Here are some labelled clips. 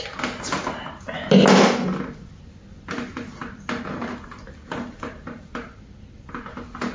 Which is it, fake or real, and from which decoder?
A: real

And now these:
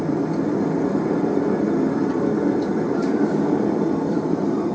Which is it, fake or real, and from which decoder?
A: fake, vocoder, BigVGAN v2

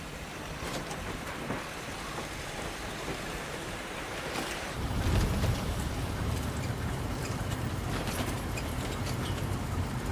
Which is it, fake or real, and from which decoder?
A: fake, vocoder, BigVGAN v2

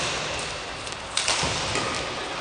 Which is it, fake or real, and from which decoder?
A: real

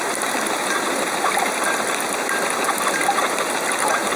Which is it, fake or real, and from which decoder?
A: real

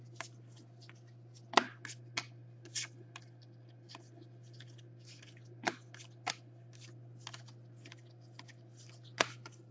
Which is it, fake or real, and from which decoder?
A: real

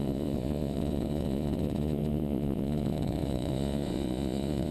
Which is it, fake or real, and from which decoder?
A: fake, vocoder, Vocos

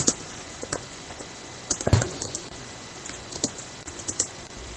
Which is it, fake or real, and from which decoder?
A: fake, vocoder, Vocos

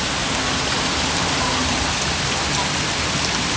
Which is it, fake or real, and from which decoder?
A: real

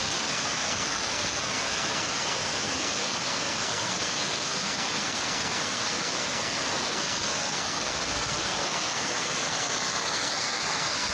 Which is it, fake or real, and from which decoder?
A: fake, codec, SNAC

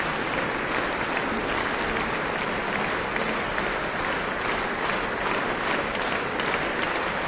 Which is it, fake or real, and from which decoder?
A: real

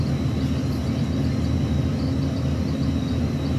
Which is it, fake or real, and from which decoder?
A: real